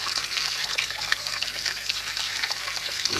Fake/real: fake